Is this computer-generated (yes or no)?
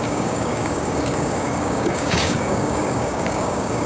yes